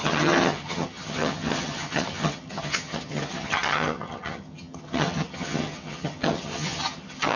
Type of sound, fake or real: fake